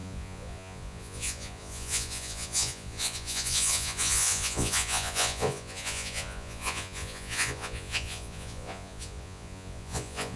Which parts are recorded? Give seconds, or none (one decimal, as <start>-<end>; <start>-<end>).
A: none

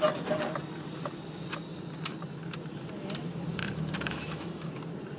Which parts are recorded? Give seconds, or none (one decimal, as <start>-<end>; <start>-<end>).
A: 0.0-3.6; 4.7-5.2

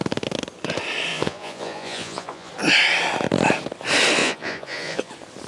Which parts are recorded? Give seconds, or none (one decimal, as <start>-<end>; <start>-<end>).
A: 0.0-1.1; 2.5-4.2; 5.1-5.5